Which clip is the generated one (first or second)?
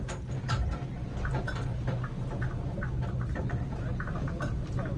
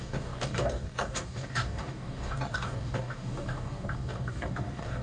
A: second